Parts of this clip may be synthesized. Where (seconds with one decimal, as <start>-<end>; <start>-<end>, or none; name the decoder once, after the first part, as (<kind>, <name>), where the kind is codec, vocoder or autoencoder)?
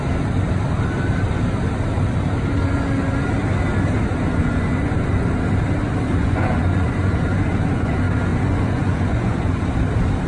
4.4-5.1 (vocoder, Vocos); 6.2-7.9; 8.3-9.7